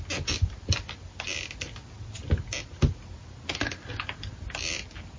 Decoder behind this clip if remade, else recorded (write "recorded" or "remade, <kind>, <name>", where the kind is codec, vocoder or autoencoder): recorded